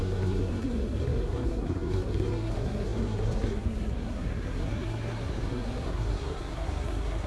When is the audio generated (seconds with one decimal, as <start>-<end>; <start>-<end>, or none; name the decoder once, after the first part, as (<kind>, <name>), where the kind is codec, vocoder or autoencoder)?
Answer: 0.0-7.3 (codec, SNAC)